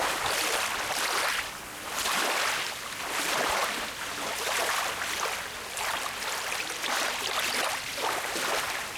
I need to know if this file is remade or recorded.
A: recorded